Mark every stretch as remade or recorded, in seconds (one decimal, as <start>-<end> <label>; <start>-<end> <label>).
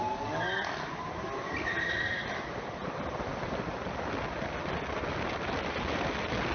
0.0-6.5 recorded